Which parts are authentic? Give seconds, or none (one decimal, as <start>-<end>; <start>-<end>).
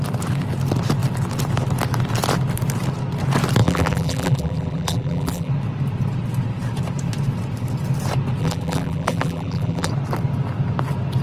0.0-3.6; 5.5-8.4; 9.9-11.2